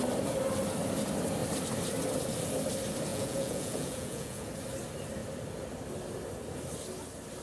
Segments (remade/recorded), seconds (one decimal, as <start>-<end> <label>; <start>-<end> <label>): 0.0-3.1 recorded; 3.1-4.5 remade; 4.5-7.4 recorded